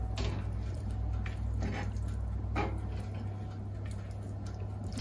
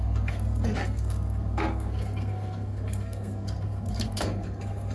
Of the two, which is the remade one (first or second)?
second